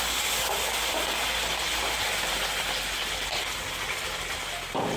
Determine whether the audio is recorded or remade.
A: recorded